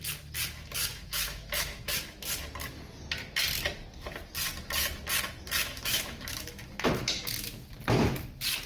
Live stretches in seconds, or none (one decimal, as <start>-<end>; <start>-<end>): 0.0-0.9; 2.0-5.6; 7.7-8.7